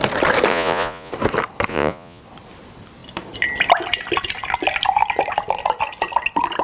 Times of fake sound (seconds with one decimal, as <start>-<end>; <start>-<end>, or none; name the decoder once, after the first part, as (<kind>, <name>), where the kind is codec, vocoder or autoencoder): 0.5-1.1 (vocoder, Vocos); 1.7-2.2